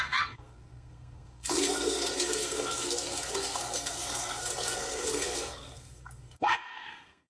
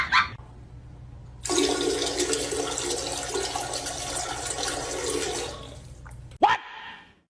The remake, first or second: first